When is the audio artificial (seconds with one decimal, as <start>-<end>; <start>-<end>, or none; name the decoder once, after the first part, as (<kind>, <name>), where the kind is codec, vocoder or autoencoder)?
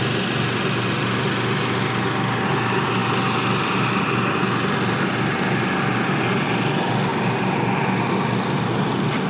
none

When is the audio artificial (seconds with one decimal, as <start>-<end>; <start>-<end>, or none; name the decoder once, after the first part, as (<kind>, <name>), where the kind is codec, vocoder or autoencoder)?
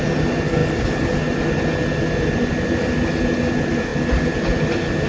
none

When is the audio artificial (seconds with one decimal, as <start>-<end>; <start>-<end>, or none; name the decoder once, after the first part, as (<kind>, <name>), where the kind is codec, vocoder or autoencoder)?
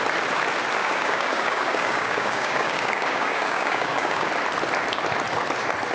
0.8-4.3 (codec, DAC)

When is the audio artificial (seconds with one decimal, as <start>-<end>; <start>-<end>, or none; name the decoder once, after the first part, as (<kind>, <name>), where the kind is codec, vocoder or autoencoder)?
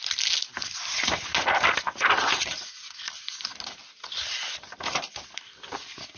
none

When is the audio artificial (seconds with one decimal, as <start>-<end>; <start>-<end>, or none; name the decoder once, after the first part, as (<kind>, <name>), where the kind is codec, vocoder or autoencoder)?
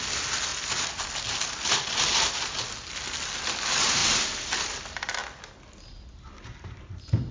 none